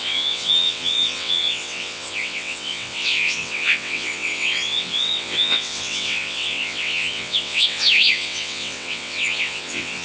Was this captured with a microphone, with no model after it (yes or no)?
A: no